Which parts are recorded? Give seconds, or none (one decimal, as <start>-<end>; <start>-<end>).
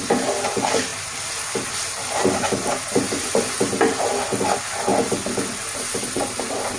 0.0-6.8